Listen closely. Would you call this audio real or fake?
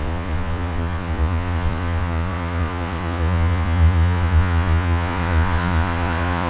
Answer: fake